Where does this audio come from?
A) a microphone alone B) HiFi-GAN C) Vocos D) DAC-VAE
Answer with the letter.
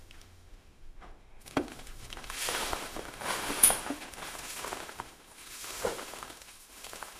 D